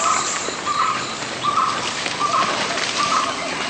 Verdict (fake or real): real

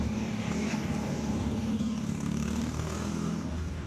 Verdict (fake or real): fake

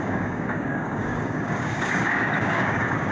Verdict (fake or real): fake